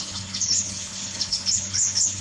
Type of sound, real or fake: fake